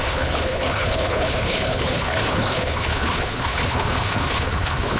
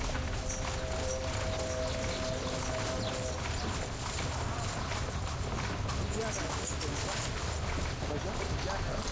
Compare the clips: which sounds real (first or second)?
second